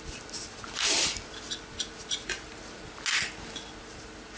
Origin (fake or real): real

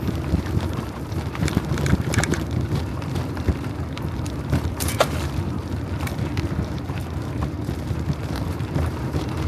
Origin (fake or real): fake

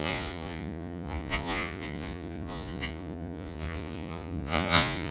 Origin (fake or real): fake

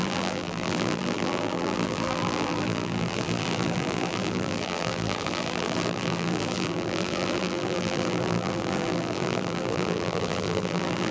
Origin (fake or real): fake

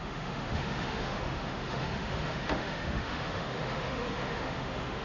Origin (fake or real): fake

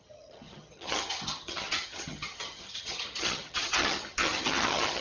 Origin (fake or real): fake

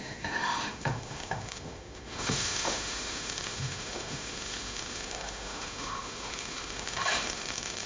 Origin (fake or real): fake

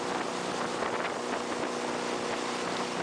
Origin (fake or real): real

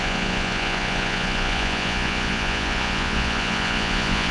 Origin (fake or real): fake